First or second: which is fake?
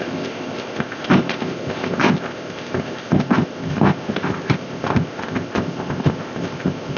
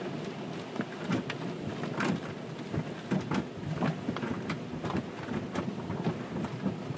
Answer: first